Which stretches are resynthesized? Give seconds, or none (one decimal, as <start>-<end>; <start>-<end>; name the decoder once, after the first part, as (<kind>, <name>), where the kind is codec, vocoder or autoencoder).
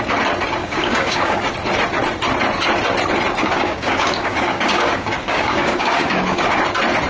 0.6-1.5 (codec, DAC); 3.4-6.6